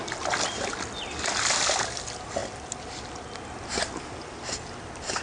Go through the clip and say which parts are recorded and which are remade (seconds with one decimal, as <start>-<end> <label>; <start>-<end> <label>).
0.0-5.2 recorded